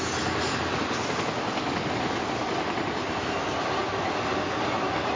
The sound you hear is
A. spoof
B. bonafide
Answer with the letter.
B